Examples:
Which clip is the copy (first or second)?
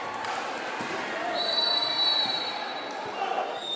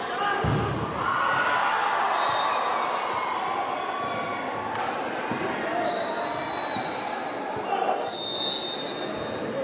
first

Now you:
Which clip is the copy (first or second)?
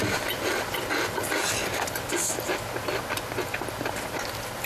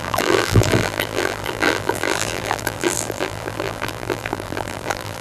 second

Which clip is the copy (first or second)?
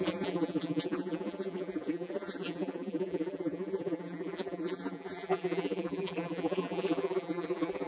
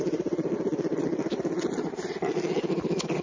first